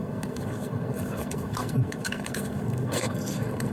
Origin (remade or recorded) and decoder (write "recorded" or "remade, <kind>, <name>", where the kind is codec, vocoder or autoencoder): remade, codec, SNAC